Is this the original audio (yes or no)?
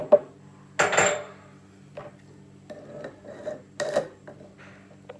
yes